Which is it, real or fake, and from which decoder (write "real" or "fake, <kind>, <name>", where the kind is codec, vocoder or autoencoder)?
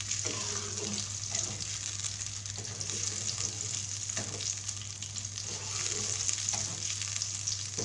real